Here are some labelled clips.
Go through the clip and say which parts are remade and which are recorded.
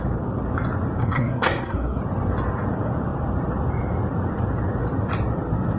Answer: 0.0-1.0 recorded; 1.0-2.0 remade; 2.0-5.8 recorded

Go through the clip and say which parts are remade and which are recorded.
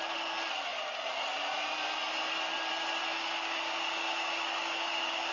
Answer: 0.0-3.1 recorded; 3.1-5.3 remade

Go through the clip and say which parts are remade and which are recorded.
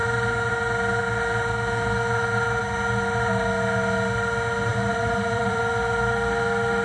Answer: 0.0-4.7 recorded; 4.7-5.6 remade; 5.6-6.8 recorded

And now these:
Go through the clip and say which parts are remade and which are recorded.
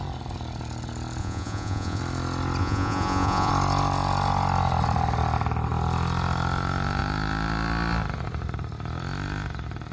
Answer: 0.0-1.2 recorded; 1.2-2.0 remade; 2.0-2.6 recorded; 2.6-3.5 remade; 3.5-9.9 recorded